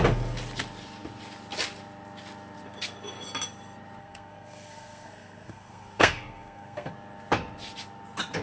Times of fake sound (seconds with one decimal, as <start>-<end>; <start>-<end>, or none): 4.0-6.9